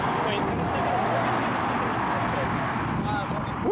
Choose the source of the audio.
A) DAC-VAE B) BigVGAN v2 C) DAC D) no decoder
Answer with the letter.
D